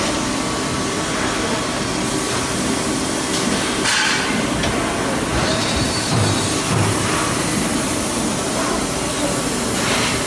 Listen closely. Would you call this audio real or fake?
real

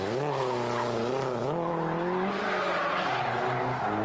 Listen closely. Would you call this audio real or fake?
real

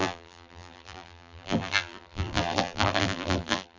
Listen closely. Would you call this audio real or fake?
fake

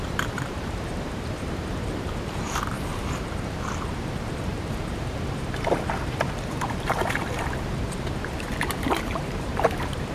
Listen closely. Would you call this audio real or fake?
fake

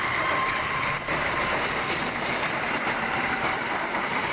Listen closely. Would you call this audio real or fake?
fake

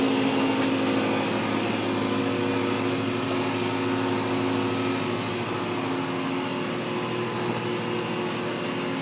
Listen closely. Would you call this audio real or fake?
real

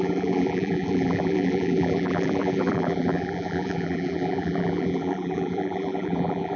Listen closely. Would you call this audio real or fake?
fake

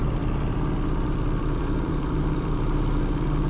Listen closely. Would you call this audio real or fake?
fake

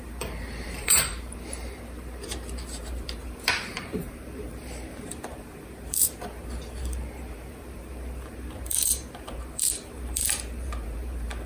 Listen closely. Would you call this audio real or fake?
fake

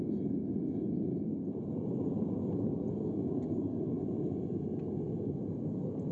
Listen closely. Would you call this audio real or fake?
real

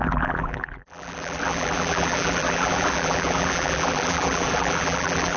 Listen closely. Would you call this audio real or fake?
fake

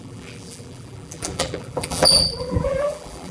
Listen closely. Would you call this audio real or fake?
fake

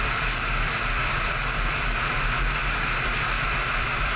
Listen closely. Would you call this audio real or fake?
fake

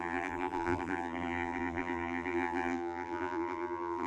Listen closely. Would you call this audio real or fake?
fake